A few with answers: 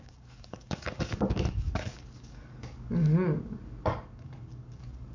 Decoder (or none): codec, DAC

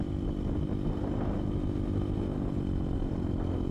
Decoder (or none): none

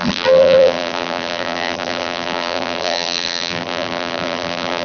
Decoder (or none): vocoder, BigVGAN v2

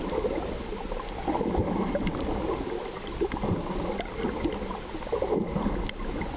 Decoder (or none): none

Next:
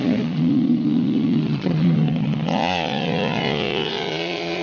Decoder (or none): vocoder, Vocos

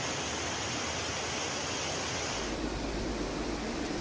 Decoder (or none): none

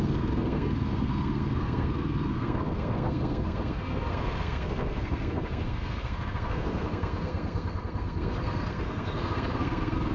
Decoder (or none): codec, SNAC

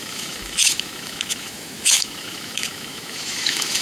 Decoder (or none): autoencoder, DAC-VAE